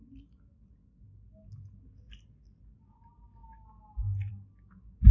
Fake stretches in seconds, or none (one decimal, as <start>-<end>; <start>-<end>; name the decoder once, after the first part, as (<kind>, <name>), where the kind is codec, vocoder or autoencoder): none